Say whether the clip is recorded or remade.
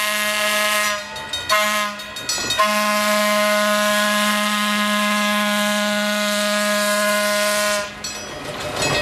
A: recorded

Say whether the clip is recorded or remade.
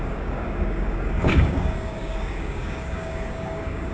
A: remade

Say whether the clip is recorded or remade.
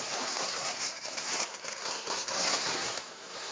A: remade